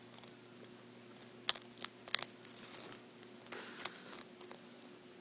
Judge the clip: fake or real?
real